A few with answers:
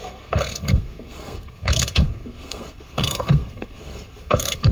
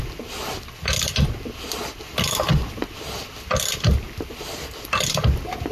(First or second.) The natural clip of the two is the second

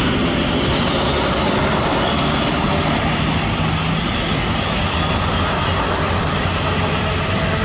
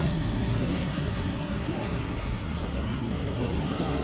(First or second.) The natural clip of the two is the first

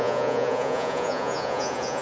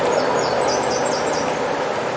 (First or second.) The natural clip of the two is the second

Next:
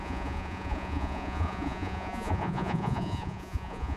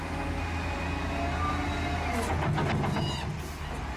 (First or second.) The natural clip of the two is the second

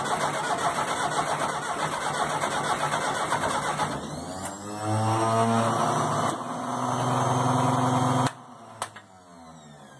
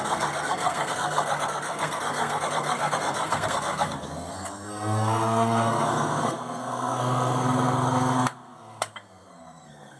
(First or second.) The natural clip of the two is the first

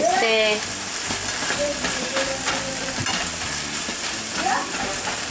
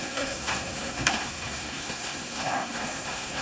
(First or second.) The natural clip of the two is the first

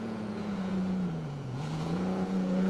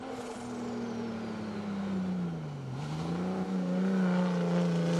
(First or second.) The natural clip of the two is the second